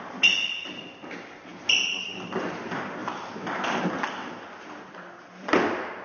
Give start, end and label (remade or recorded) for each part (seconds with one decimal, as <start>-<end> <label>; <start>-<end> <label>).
0.0-6.0 recorded